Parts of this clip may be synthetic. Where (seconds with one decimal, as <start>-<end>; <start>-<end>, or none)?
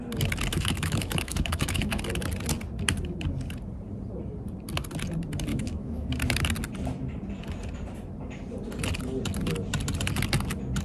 0.5-2.0; 5.5-6.1